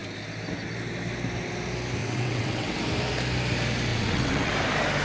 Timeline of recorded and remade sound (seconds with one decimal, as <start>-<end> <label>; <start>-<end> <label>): 0.0-2.0 recorded; 2.0-2.8 remade; 2.8-3.9 recorded; 3.9-4.5 remade; 4.5-5.0 recorded